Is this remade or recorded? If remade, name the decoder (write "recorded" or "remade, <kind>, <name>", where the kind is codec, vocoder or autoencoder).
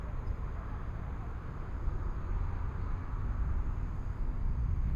recorded